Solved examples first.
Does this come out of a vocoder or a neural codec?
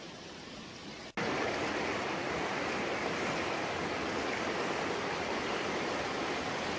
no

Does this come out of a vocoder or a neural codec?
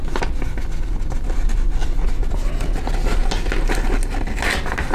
no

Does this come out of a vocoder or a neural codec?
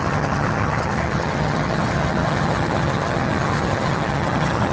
yes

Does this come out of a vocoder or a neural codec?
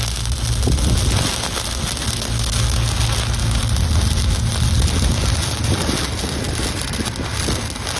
no